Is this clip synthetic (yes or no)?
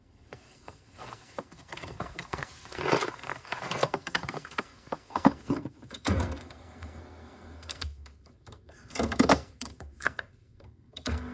yes